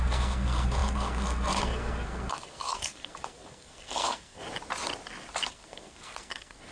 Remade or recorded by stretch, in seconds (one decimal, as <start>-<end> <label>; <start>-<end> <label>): 0.0-4.4 remade; 4.4-5.5 recorded; 5.5-6.7 remade